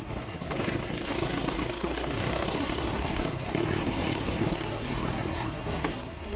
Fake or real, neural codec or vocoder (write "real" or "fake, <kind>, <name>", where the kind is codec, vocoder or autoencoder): fake, codec, SNAC